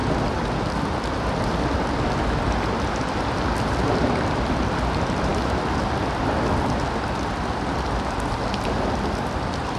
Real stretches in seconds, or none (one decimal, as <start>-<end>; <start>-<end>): 0.0-9.8